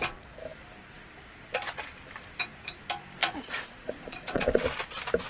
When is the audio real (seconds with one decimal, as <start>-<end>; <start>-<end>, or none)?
0.0-3.2; 4.6-5.3